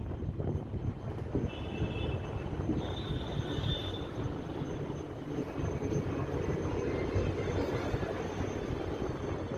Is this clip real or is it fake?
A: real